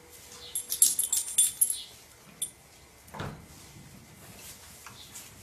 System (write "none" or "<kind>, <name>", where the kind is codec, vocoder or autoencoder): none